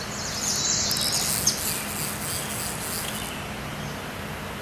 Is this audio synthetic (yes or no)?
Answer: no